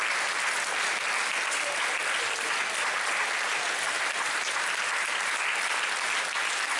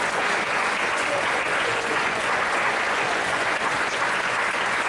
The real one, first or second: first